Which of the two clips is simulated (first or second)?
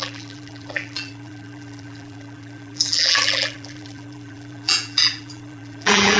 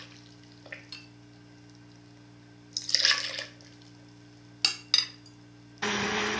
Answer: first